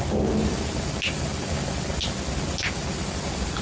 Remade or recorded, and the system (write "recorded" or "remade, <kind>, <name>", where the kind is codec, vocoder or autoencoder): recorded